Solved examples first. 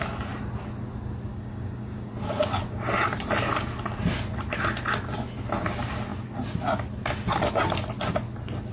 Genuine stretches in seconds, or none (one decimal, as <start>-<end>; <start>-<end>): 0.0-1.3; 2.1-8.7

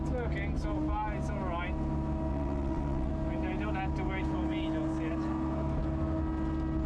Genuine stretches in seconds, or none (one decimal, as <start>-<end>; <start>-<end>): 0.0-2.3; 3.1-6.9

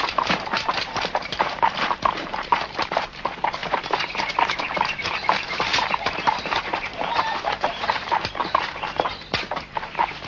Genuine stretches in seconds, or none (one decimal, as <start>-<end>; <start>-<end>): none